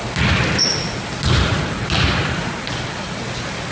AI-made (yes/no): no